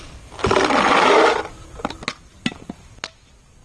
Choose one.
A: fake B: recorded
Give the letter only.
B